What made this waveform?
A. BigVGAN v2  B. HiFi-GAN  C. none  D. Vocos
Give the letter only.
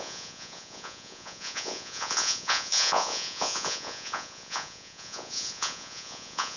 D